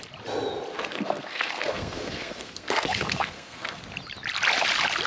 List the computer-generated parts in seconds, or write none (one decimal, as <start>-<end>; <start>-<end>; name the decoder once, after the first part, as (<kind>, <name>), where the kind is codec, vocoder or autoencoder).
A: 0.7-3.8 (codec, SNAC)